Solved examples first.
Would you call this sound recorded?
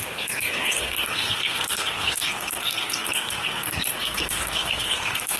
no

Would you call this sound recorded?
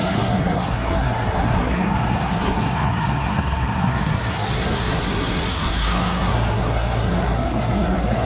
no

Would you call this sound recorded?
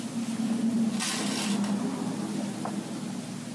yes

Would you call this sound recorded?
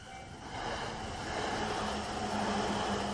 yes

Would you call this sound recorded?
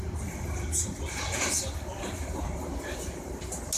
yes